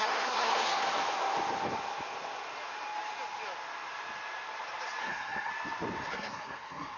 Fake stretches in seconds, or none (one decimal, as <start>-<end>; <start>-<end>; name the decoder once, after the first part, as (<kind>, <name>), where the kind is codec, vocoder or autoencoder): 0.0-0.8 (codec, SNAC); 5.0-5.5; 6.1-7.0